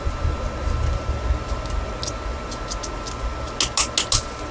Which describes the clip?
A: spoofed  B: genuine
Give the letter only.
B